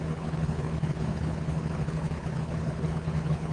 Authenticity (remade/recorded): remade